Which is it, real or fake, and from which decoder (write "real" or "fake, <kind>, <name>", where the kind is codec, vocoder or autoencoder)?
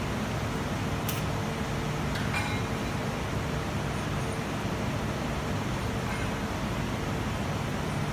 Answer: real